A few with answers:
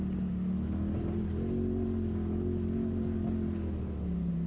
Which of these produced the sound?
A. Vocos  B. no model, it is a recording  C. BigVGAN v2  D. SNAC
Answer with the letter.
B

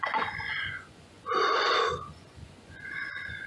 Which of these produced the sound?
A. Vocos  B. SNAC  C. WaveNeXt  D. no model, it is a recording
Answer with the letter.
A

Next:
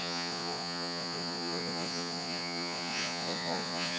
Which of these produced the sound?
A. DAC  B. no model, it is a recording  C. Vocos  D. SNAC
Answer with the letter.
C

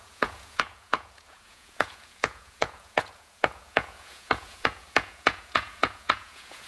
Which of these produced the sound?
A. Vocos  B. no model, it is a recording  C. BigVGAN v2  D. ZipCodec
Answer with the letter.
A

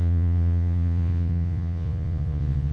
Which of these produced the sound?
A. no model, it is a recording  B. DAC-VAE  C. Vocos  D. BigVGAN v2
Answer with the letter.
C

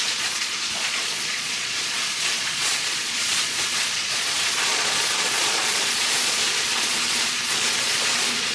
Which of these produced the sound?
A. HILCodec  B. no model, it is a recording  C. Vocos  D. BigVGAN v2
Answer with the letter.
C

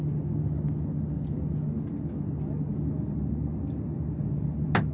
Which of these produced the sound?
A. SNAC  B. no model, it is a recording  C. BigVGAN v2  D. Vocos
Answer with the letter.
B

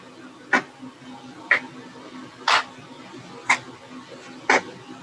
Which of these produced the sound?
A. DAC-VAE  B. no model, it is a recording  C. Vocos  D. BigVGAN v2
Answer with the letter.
B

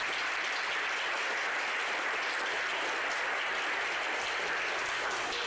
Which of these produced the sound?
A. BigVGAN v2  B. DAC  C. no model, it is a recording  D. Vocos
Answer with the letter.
C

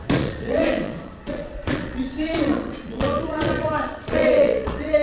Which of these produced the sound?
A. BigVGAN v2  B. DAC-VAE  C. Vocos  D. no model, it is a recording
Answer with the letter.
C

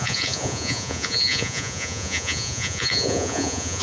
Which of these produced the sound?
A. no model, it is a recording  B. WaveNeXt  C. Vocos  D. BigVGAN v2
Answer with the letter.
C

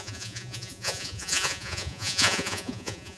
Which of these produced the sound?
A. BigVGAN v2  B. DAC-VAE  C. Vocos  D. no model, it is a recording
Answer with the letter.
C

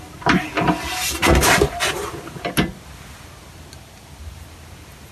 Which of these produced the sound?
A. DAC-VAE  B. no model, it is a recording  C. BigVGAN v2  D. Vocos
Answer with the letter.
B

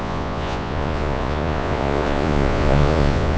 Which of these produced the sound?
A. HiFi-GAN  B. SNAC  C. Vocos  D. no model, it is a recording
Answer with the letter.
C